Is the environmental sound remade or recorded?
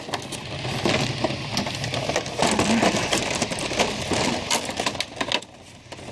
recorded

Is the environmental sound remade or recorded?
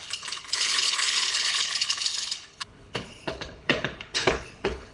remade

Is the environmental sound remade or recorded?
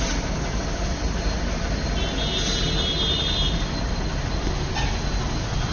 recorded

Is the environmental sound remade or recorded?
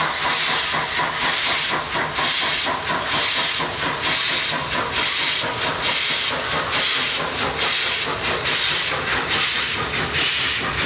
recorded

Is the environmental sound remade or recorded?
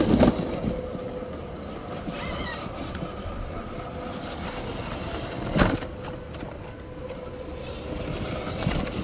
recorded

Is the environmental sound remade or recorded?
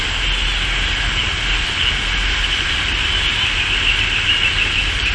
recorded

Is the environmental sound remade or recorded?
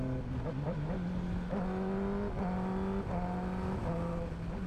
recorded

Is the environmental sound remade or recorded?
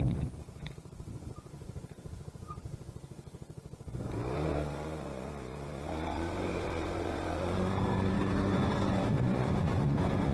remade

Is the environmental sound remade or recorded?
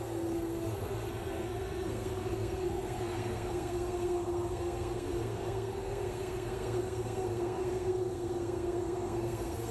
remade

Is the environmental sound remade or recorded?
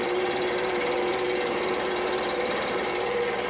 remade